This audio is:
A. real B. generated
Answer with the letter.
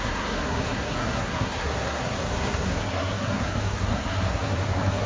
B